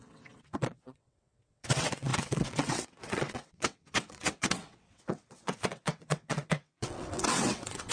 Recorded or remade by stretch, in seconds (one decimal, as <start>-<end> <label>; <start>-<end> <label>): 0.0-7.9 remade